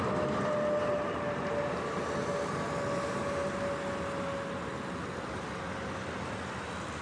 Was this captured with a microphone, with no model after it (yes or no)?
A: yes